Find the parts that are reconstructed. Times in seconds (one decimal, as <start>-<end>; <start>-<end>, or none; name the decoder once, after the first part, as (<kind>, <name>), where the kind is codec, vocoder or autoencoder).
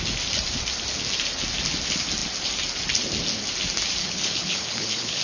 4.0-5.2 (codec, HILCodec)